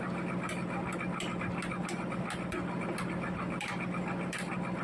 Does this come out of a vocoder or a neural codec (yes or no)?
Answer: no